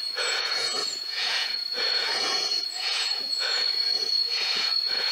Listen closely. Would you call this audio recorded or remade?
remade